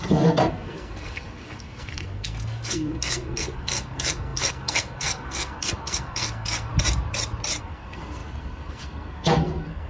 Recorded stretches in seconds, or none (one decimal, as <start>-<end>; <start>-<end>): 6.7-7.6

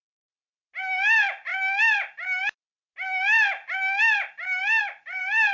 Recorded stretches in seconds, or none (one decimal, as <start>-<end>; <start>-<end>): 0.0-5.5